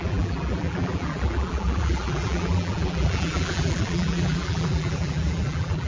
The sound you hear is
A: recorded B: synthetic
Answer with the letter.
B